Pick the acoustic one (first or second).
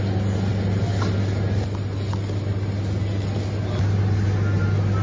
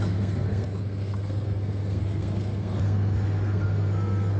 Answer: first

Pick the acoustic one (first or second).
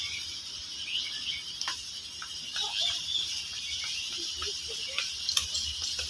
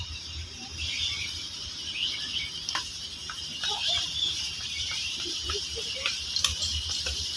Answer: first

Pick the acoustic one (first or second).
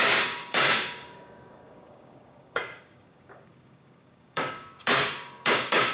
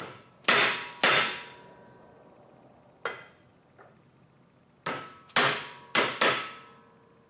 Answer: second